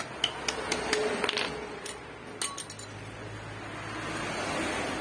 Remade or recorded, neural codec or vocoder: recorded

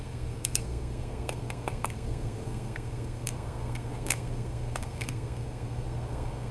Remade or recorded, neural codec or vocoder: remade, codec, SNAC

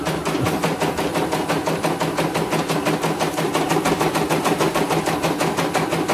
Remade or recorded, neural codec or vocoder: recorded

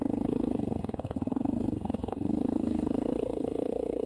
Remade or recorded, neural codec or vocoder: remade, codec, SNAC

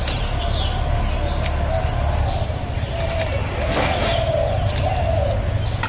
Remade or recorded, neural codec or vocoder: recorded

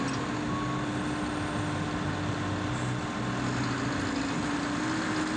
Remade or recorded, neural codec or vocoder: recorded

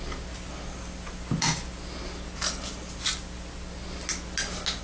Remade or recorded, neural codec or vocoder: recorded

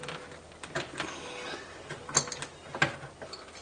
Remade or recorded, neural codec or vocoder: recorded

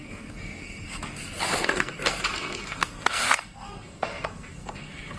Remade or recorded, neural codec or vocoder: remade, codec, SNAC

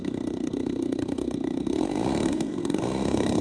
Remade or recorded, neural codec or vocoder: remade, codec, SNAC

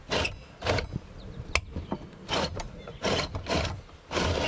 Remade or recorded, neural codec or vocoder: recorded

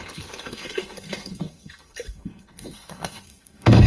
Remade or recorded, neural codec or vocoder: remade, codec, SNAC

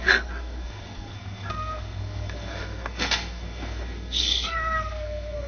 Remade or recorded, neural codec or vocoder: remade, codec, SNAC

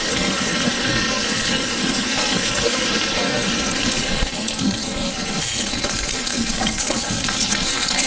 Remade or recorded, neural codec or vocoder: remade, codec, SNAC